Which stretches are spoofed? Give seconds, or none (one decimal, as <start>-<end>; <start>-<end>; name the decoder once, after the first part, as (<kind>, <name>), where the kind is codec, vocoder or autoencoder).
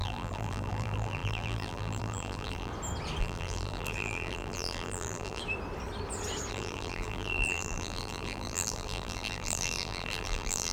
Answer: 0.0-2.7 (vocoder, BigVGAN v2); 3.2-5.4; 6.5-10.7